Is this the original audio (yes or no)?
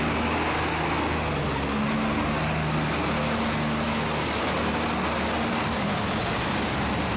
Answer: yes